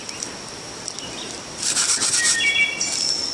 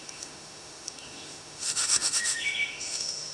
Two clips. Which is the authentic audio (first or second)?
first